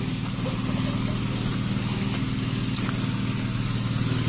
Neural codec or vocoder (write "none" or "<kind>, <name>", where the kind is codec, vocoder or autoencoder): none